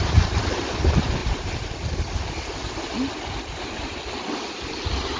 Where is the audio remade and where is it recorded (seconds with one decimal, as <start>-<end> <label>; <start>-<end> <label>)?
0.0-5.2 recorded

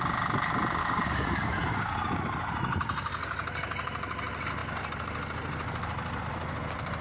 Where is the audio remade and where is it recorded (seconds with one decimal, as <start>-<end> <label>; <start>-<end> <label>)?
0.0-0.8 recorded; 0.8-1.9 remade; 1.9-7.0 recorded

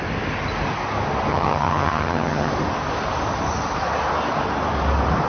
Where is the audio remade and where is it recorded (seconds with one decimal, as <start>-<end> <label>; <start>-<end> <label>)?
0.0-1.3 recorded; 1.3-2.5 remade; 2.5-5.3 recorded

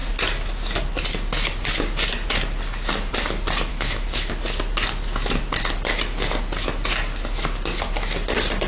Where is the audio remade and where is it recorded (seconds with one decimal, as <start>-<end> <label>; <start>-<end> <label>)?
0.0-3.7 recorded; 3.7-4.3 remade; 4.3-8.7 recorded

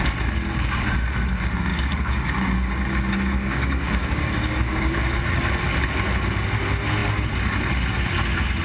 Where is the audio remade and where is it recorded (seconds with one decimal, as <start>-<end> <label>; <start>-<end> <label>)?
0.0-1.7 recorded; 1.7-5.5 remade; 5.5-8.6 recorded

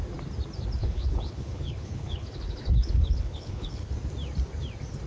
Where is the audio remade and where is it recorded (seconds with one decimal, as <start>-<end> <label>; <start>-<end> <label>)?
0.0-0.8 recorded; 0.8-3.9 remade; 3.9-5.1 recorded